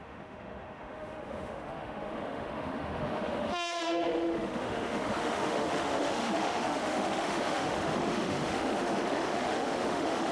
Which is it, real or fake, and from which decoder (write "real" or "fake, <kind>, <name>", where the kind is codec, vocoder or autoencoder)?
fake, autoencoder, DAC-VAE